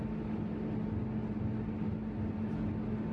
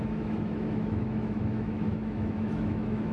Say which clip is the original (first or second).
first